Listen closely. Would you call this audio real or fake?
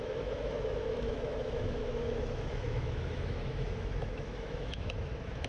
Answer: fake